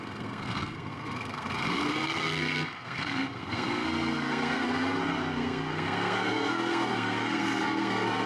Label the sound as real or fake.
fake